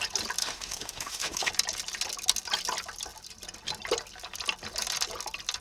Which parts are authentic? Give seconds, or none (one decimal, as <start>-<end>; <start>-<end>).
0.0-0.4; 1.5-5.6

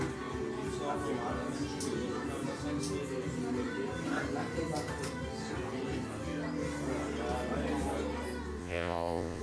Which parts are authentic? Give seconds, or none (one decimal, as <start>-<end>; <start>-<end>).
0.0-8.6

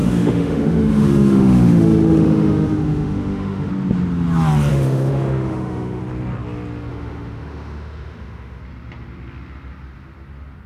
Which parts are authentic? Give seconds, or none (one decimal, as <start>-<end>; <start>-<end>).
3.7-4.7; 6.0-6.9; 8.6-10.7

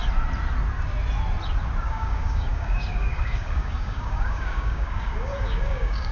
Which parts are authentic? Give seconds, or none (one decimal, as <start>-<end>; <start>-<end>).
0.0-1.8

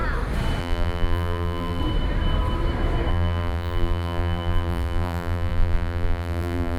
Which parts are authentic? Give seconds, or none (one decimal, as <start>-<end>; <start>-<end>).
0.0-0.6; 1.8-3.1

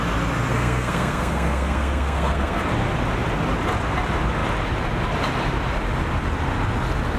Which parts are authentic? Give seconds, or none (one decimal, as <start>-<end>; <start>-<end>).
0.0-0.5; 2.6-7.2

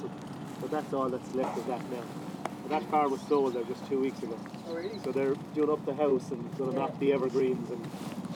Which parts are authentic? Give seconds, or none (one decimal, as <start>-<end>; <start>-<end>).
0.0-4.4; 4.9-6.1; 7.9-8.3